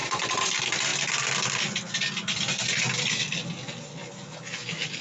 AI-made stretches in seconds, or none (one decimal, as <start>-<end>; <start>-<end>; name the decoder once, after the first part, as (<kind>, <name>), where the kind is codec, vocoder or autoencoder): 0.0-0.5 (vocoder, Vocos)